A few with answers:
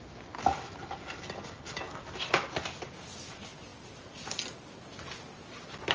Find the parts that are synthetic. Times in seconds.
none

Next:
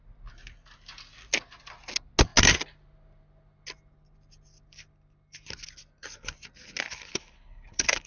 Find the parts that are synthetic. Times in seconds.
7.1-8.1 (codec, HILCodec)

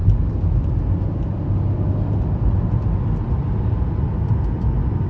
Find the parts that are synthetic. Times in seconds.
none

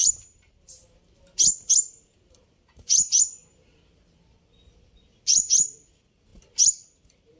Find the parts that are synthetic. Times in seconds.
0.0-1.2 (vocoder, BigVGAN v2); 2.2-3.1

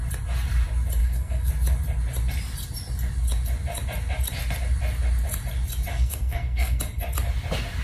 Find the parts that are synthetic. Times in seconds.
1.0-1.5 (codec, SNAC); 5.9-6.8

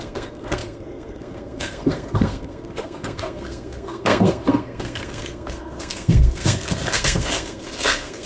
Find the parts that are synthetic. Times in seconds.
0.0-8.3 (codec, SNAC)